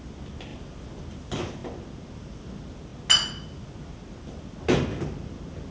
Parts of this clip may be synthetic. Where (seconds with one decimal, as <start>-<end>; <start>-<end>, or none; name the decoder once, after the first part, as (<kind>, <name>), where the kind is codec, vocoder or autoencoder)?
none